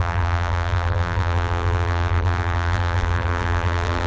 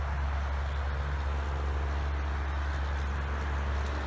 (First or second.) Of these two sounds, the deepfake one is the first